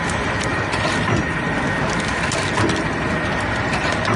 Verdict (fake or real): real